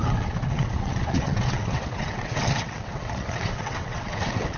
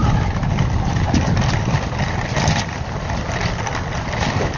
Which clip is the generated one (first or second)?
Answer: first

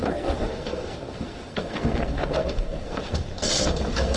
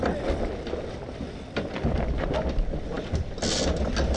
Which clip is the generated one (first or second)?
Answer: first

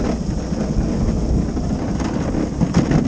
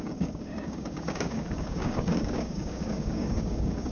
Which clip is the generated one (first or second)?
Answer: second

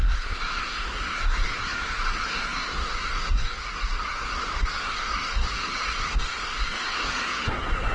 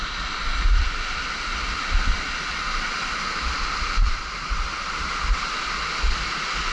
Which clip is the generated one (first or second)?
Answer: first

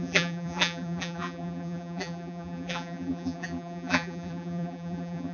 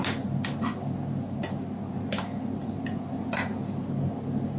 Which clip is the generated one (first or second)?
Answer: first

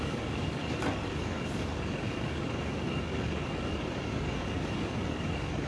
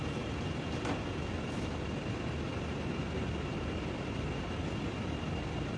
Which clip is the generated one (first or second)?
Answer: first